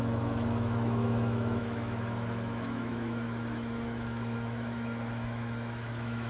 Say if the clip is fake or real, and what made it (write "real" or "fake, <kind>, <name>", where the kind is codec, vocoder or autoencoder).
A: fake, autoencoder, DAC-VAE